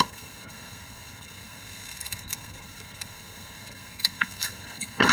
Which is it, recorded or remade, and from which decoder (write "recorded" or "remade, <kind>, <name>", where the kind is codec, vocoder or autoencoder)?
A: remade, codec, SNAC